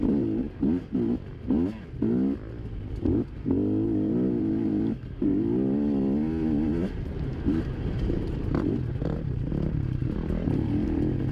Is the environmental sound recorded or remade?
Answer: recorded